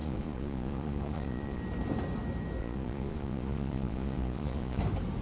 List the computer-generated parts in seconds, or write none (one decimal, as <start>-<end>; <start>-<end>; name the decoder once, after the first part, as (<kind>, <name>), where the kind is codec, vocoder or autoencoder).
0.0-1.6 (vocoder, Vocos); 2.6-4.8